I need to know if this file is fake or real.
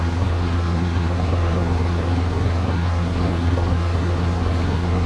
fake